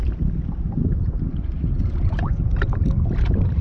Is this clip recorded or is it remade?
recorded